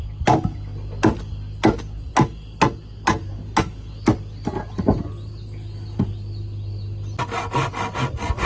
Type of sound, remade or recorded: recorded